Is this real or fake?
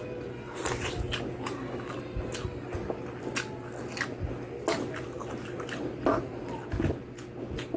real